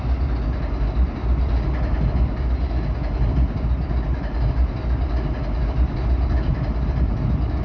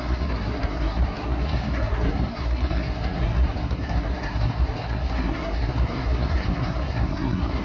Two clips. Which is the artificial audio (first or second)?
second